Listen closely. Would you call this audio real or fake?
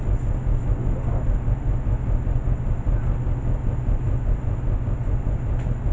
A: real